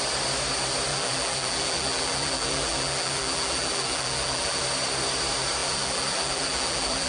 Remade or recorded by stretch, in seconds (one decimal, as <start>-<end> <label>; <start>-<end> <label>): 0.0-0.9 recorded; 0.9-4.6 remade; 4.6-5.6 recorded; 5.6-7.1 remade

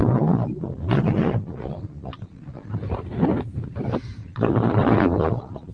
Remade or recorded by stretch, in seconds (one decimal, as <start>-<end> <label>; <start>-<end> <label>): 0.0-2.8 remade; 2.8-4.2 recorded; 4.2-5.7 remade

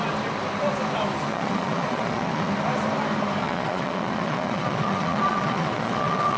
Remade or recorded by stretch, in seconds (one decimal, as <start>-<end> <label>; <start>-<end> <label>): 0.0-1.3 recorded; 1.3-2.5 remade; 2.5-3.4 recorded; 3.4-6.4 remade

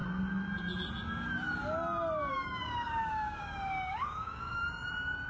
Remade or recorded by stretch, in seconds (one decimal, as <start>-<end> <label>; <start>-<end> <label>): 0.0-2.3 recorded; 2.3-4.6 remade; 4.6-5.3 recorded

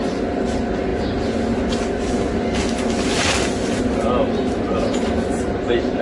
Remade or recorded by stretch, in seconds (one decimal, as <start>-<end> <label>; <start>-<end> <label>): 0.0-6.0 recorded

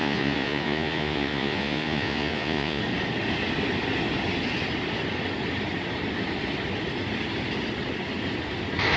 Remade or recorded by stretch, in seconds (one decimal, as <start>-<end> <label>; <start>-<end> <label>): 0.0-2.8 remade; 2.8-9.0 recorded